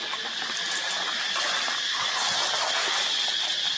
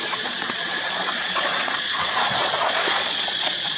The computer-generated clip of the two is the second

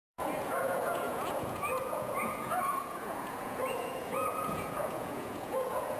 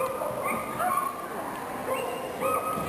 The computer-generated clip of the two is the first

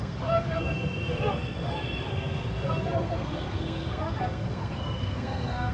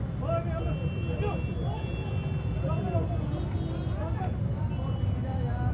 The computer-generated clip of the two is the first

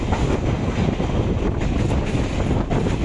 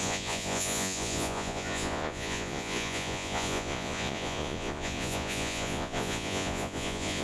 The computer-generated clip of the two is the second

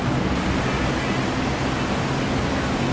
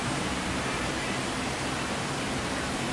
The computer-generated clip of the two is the second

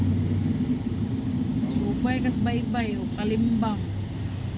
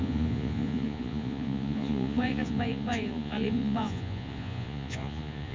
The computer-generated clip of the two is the second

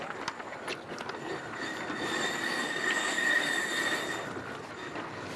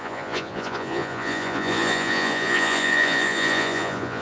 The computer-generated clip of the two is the second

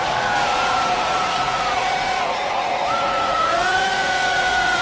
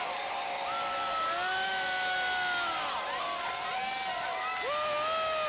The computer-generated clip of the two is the first